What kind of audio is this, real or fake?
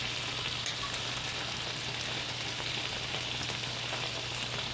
real